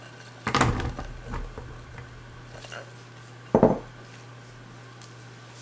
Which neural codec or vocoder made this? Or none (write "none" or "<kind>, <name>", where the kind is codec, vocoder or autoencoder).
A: none